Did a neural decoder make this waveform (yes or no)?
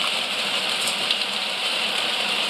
yes